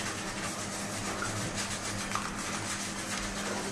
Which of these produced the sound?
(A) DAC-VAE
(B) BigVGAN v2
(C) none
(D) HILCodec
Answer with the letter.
C